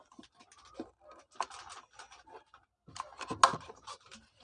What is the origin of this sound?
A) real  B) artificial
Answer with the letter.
A